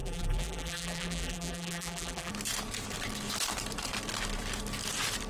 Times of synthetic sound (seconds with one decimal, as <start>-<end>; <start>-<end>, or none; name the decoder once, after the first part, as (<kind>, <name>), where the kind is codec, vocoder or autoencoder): 0.0-2.3 (vocoder, BigVGAN v2)